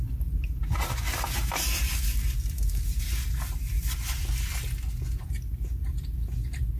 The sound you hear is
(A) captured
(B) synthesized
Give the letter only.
A